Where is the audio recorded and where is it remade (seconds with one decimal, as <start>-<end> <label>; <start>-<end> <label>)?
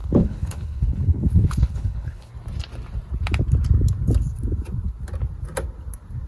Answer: 0.0-2.3 remade; 2.3-6.3 recorded